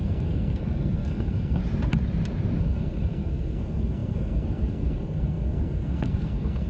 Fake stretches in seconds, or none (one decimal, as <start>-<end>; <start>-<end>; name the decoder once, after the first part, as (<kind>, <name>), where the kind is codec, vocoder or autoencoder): 0.0-1.6 (codec, SNAC); 2.6-6.7